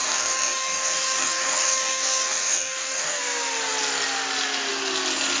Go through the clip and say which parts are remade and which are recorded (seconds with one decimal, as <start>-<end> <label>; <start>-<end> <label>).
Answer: 0.0-3.2 remade; 3.2-5.4 recorded